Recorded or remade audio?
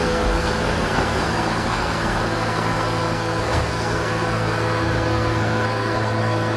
remade